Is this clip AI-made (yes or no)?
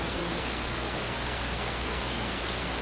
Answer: yes